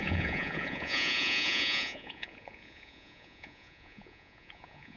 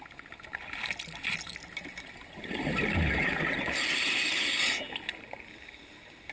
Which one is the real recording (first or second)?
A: second